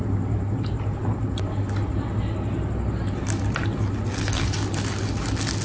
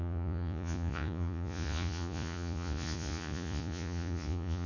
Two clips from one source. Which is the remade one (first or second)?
second